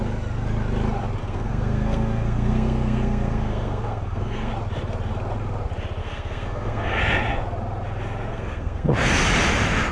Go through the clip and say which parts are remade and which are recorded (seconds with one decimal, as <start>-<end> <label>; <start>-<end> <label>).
0.0-1.2 recorded; 1.2-4.5 remade; 4.5-6.0 recorded; 6.0-7.0 remade; 7.0-8.3 recorded; 8.3-8.9 remade; 8.9-9.9 recorded